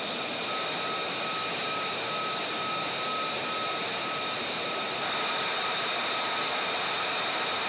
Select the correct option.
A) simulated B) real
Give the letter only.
B